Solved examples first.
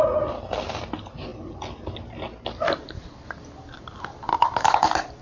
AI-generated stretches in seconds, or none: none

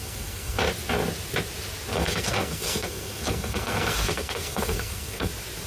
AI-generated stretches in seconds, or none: 0.0-0.6; 1.9-5.3

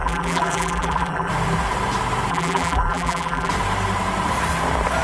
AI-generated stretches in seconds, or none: 0.0-1.3; 2.3-3.5

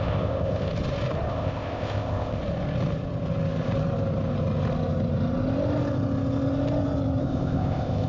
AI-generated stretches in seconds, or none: 0.0-0.7; 1.3-2.4; 7.2-8.1

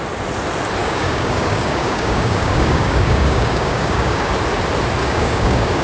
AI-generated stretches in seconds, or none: 0.8-4.3; 5.0-5.8

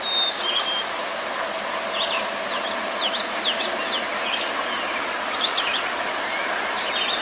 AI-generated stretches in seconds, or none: none

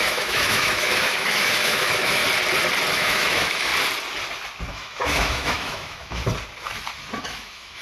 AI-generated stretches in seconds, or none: 0.0-2.2; 2.9-3.7; 4.7-6.2; 7.2-7.8

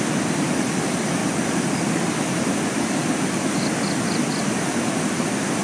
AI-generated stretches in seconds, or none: none